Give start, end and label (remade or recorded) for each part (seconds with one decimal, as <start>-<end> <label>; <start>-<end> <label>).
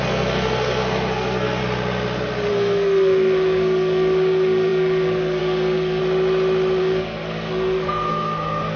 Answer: 0.0-1.6 remade; 1.6-2.5 recorded; 2.5-6.0 remade; 6.0-6.8 recorded; 6.8-8.8 remade